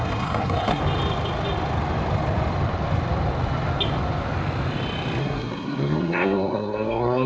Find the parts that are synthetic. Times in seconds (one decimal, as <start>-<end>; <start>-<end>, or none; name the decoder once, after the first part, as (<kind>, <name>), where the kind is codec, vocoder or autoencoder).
0.0-0.8 (codec, SNAC); 5.2-7.3